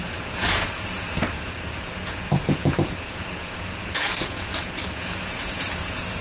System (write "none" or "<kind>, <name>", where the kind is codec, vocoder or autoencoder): vocoder, Vocos